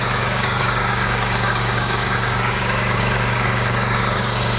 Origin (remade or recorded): remade